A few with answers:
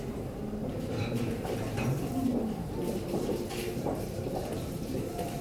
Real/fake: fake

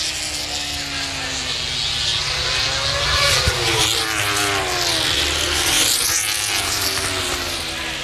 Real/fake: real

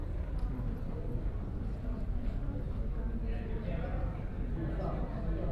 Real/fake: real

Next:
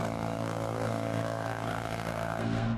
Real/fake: fake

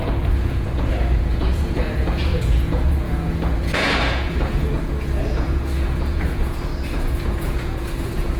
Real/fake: fake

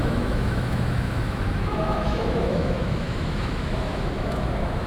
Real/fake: fake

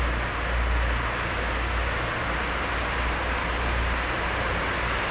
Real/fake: real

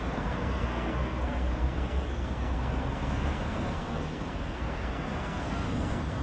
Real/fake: fake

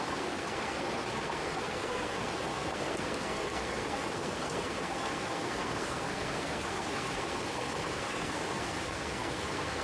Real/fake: fake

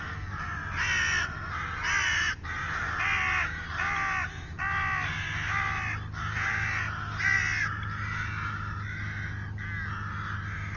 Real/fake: real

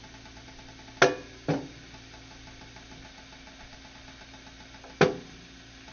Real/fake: real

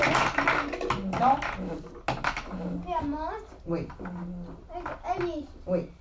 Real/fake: real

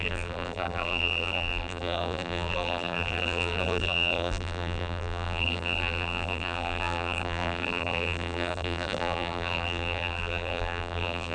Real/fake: fake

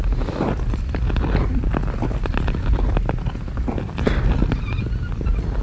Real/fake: real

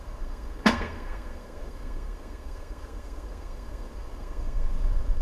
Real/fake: fake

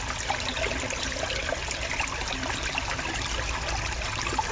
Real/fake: real